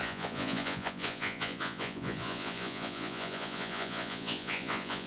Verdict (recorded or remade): remade